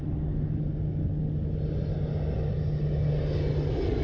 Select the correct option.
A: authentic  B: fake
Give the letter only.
A